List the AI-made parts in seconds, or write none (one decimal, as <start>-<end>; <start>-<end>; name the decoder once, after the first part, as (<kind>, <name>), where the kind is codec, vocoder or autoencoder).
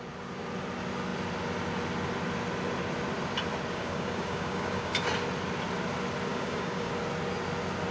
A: 3.7-4.9 (codec, DAC); 6.3-6.9